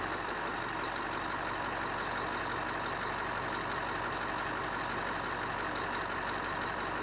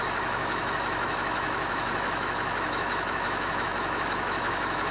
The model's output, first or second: second